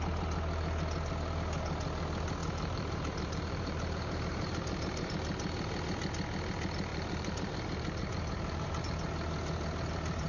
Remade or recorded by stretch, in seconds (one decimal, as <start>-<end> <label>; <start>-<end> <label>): 0.0-2.4 recorded; 2.4-5.1 remade; 5.1-6.9 recorded; 6.9-8.8 remade; 8.8-10.3 recorded